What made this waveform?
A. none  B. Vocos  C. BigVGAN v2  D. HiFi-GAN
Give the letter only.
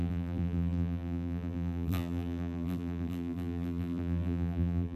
C